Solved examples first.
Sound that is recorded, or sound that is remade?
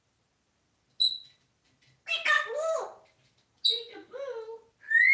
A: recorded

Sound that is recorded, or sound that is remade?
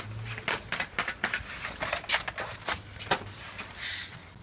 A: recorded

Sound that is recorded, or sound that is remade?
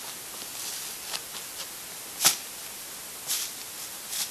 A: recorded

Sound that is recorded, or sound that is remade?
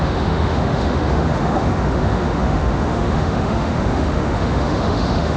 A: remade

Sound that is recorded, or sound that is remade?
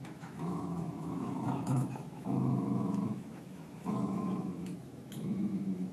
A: remade